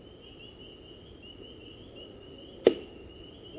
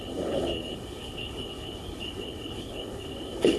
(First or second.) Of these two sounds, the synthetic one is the second